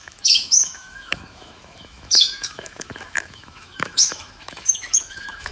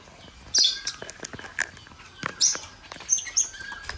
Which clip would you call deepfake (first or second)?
first